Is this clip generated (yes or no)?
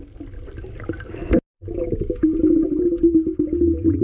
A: no